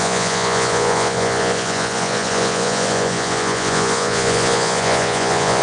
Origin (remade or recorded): remade